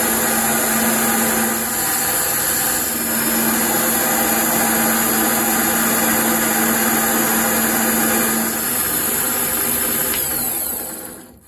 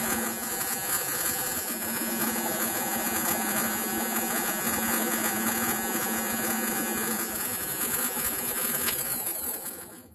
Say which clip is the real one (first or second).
first